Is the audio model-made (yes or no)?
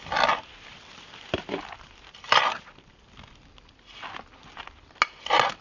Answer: no